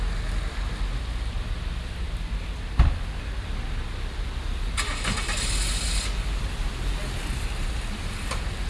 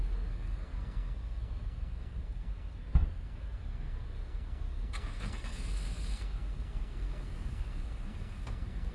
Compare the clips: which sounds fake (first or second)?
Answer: second